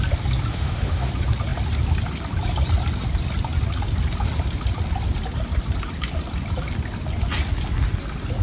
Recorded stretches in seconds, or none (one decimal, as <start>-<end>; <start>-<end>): 0.0-0.5; 1.1-8.4

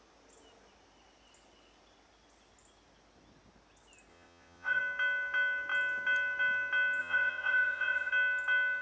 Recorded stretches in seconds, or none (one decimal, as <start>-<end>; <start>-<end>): 0.0-4.1; 4.8-7.0; 8.1-8.8

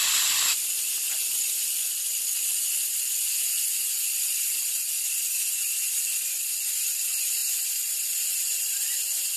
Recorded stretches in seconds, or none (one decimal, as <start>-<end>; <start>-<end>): 0.9-4.0

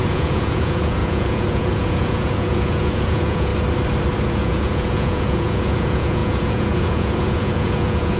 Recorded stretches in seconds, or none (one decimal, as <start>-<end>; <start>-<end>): 3.5-4.3